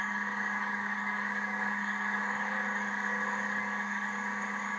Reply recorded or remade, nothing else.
remade